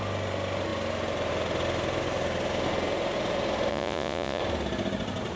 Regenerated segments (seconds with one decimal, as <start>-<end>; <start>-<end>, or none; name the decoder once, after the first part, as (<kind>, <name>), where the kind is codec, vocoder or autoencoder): 3.7-4.4 (vocoder, Vocos)